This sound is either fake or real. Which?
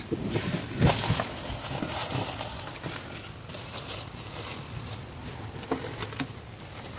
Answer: real